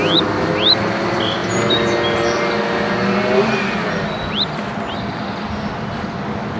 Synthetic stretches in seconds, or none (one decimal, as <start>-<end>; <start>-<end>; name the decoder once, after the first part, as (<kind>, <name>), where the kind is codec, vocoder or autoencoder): none